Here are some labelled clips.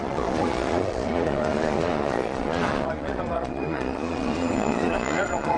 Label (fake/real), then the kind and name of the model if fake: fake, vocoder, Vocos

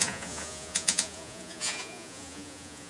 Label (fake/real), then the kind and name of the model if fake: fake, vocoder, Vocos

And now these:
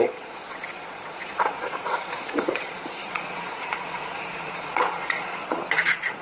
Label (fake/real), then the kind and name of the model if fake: fake, vocoder, Vocos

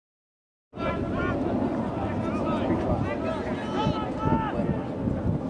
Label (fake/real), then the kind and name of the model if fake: real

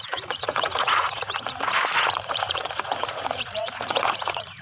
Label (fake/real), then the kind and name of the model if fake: fake, vocoder, Vocos